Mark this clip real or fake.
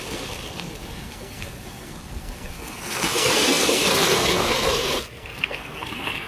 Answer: fake